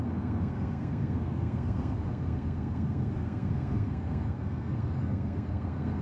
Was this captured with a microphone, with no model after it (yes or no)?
no